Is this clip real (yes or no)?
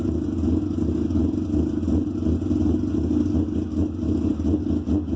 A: yes